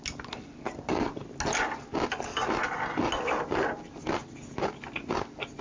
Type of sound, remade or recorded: recorded